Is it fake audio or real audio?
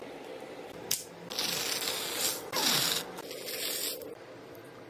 real